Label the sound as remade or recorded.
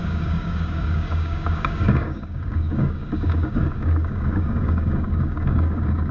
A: remade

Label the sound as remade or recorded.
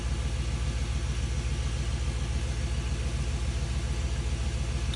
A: recorded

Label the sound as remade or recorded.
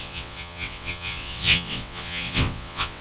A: remade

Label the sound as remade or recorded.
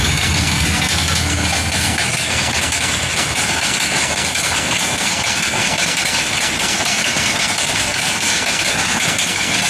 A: remade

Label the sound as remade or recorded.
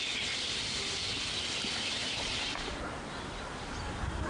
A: recorded